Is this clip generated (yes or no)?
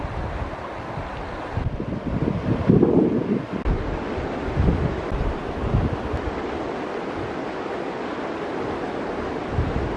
no